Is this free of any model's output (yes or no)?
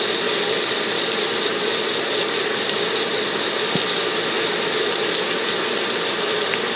yes